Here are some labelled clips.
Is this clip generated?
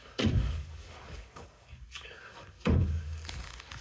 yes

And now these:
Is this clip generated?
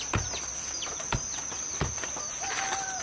no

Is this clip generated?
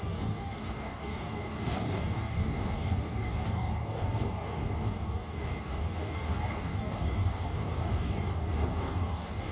yes